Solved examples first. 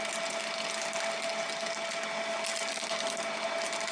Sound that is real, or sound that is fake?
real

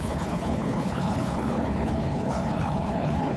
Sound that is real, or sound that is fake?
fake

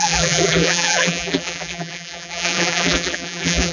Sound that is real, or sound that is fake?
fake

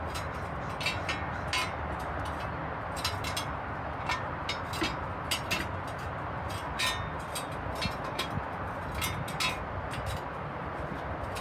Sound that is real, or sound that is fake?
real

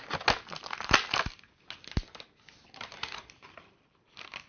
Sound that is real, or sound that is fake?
real